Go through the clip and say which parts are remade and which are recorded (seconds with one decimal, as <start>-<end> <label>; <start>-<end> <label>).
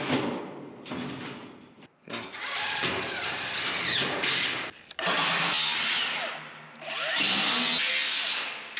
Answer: 0.0-8.8 recorded